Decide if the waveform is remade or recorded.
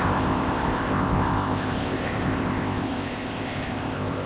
remade